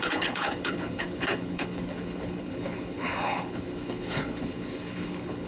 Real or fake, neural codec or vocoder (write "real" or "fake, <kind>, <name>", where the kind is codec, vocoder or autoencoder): fake, codec, HILCodec